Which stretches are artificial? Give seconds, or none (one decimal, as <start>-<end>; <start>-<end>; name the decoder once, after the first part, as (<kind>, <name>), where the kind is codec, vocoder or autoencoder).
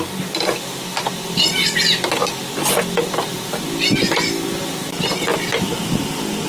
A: none